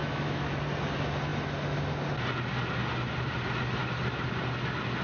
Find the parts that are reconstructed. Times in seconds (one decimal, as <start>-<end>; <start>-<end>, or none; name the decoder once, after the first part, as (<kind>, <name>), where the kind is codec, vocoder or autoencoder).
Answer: 0.0-0.5 (autoencoder, DAC-VAE)